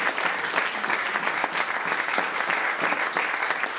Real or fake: real